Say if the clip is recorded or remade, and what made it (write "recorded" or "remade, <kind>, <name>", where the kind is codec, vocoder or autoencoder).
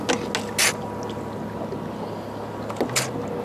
recorded